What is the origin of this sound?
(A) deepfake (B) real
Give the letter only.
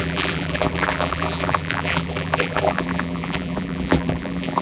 A